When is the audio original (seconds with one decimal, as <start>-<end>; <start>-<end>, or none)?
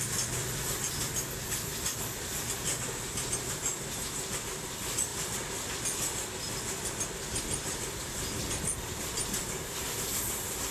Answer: 0.0-10.7